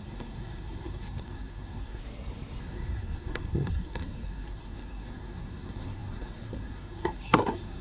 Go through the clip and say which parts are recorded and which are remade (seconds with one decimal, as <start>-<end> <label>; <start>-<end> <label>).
0.0-2.0 remade; 2.0-2.6 recorded; 2.6-7.8 remade